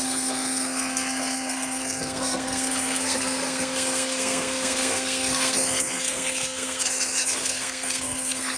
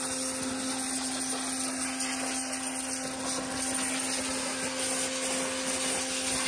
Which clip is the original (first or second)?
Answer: second